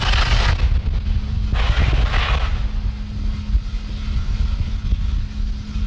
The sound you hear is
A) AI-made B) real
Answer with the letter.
B